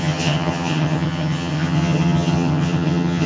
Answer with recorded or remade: remade